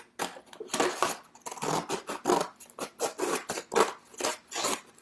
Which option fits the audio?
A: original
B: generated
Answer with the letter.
A